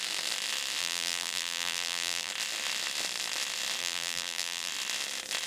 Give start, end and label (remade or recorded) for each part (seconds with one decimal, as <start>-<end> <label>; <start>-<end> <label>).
0.0-0.8 recorded; 0.8-2.3 remade; 2.3-3.8 recorded; 3.8-4.7 remade; 4.7-5.5 recorded